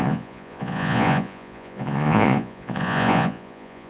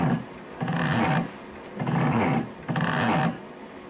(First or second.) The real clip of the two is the second